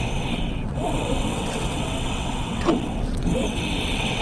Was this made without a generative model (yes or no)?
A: no